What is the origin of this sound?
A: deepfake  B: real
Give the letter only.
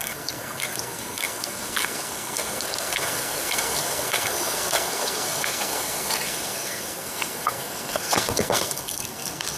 A